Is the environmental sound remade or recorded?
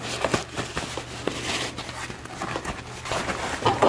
recorded